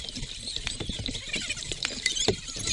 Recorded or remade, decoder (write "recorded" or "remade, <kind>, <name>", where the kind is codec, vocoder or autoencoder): remade, vocoder, BigVGAN v2